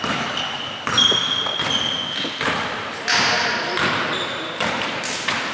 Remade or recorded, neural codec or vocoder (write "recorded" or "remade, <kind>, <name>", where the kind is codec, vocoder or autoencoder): recorded